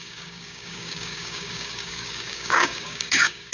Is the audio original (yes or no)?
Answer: no